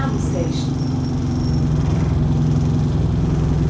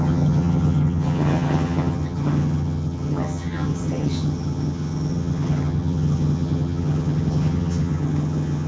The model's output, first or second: second